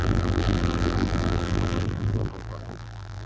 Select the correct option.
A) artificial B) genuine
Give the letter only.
A